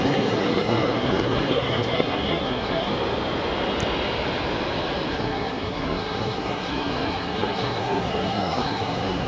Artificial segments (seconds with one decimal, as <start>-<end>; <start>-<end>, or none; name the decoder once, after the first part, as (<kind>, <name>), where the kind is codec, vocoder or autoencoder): 0.0-2.9 (codec, SNAC); 5.1-9.3

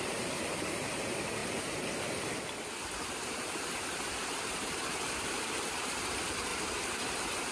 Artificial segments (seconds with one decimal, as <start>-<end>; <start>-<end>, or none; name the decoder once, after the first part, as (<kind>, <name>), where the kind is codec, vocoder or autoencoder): 0.0-1.4 (vocoder, BigVGAN v2); 3.1-6.5

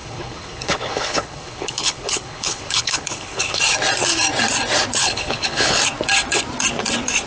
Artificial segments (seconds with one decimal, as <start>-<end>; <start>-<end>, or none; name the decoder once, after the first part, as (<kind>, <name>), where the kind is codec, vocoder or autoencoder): 0.0-3.6 (codec, HILCodec); 5.0-5.8

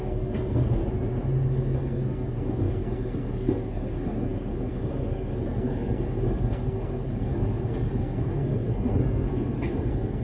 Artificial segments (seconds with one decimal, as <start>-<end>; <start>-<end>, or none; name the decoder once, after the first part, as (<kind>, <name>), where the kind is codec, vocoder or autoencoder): 0.0-0.8 (codec, SNAC); 1.5-10.2

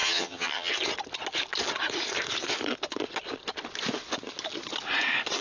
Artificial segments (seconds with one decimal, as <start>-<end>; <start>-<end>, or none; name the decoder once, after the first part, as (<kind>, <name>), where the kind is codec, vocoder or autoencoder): 0.0-0.7 (vocoder, HiFi-GAN)

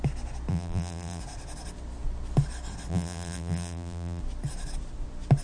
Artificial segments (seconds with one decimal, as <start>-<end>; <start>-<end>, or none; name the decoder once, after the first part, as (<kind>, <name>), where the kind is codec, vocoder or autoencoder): 0.5-1.2 (vocoder, BigVGAN v2); 2.9-4.2

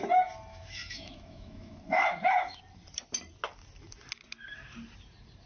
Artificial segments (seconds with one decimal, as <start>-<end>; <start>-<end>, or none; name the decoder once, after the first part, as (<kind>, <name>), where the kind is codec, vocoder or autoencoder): 0.5-2.6 (autoencoder, DAC-VAE)

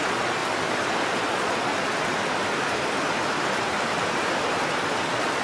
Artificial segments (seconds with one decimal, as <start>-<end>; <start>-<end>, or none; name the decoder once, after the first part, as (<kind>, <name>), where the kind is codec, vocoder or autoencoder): 0.0-0.4 (vocoder, Vocos); 1.1-1.7; 4.9-5.4